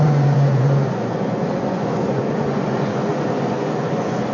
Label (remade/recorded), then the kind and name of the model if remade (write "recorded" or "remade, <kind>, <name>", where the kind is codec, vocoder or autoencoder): remade, vocoder, Vocos